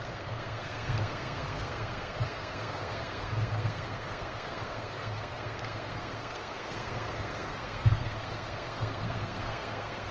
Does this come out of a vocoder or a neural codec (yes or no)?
yes